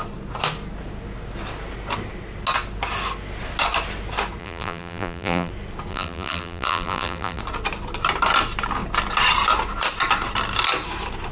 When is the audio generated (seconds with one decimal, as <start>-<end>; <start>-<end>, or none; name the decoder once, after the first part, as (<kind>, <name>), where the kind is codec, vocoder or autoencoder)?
4.4-5.5 (vocoder, BigVGAN v2); 5.9-7.4